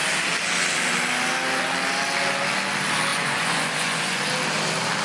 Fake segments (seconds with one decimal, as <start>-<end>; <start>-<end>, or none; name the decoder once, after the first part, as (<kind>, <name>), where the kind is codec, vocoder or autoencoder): 3.1-4.2 (vocoder, Vocos)